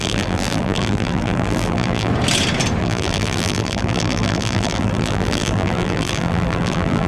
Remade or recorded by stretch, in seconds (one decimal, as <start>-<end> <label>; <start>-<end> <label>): 0.0-2.1 remade; 2.1-2.8 recorded; 2.8-7.1 remade